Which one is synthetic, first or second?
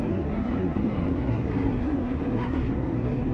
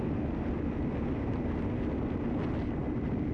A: first